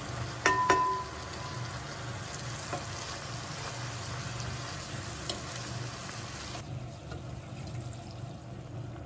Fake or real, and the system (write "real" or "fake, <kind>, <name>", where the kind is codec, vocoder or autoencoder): real